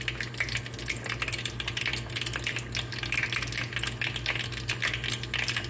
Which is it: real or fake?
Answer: real